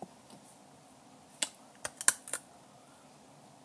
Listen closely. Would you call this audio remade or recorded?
recorded